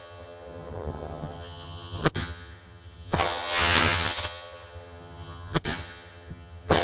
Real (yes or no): no